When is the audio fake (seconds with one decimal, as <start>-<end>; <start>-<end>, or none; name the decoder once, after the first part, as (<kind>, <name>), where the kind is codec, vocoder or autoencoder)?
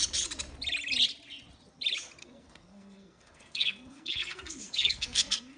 2.2-5.6 (codec, SNAC)